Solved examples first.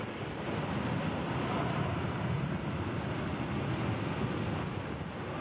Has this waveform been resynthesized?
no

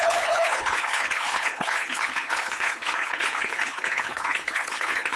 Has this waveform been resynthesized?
yes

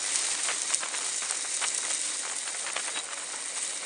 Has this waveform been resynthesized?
no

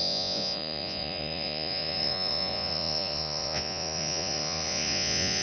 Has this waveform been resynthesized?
yes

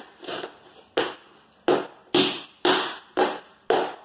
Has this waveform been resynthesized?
no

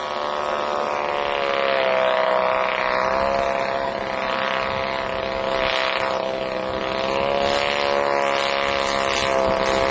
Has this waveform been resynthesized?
no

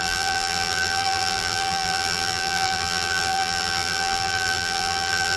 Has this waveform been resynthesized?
yes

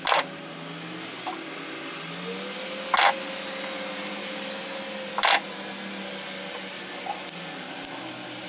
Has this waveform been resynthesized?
no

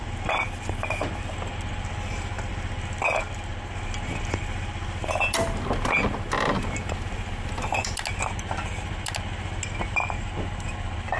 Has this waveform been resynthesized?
no